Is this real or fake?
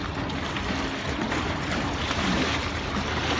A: real